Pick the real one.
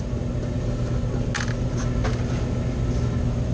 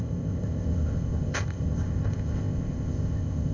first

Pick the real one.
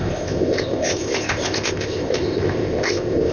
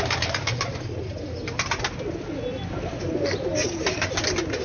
second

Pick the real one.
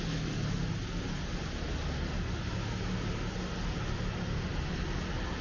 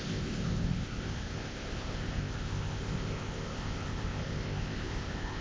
first